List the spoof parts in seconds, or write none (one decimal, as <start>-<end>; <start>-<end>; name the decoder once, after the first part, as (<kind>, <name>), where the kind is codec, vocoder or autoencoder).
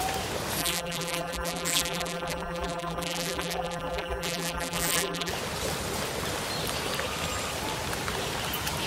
0.6-5.3 (vocoder, BigVGAN v2)